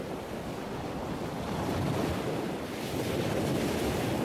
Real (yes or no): yes